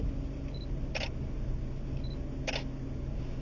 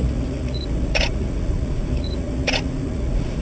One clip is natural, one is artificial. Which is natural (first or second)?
first